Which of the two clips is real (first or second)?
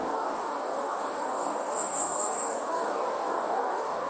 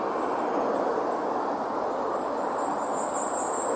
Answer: second